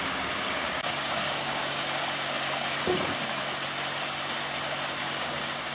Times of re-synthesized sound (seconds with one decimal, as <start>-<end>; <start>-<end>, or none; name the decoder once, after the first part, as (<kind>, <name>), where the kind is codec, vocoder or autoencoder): 0.0-1.6 (codec, DAC); 5.0-5.7